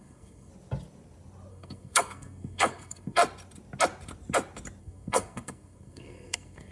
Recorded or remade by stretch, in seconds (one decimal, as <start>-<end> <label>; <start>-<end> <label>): 0.0-0.5 remade; 0.5-1.5 recorded; 1.5-3.2 remade; 3.2-4.8 recorded; 4.8-6.7 remade